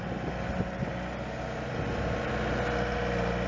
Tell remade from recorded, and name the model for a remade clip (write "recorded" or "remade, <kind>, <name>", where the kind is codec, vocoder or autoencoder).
recorded